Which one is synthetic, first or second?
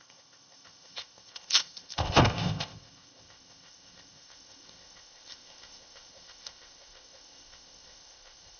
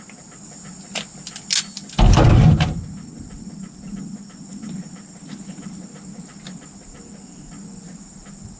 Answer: first